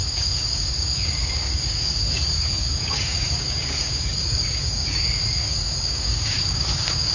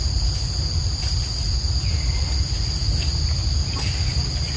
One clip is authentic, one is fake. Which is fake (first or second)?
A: first